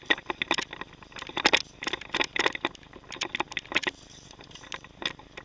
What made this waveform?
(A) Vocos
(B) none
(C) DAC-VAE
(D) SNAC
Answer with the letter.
B